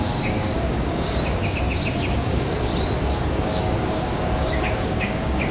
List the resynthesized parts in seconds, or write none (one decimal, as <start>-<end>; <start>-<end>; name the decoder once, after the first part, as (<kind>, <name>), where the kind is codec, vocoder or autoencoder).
0.0-1.4 (codec, DAC); 2.1-2.7; 3.3-5.5